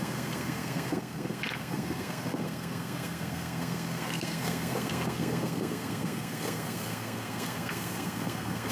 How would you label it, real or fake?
fake